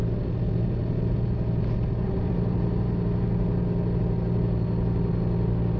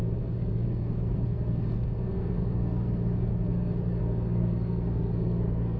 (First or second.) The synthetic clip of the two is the second